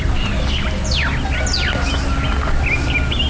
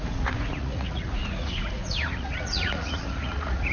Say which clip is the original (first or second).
first